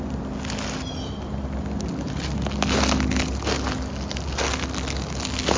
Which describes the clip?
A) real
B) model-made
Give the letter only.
A